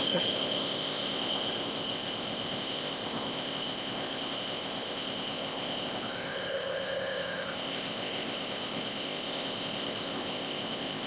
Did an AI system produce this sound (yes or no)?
yes